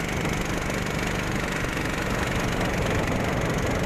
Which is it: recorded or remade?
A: recorded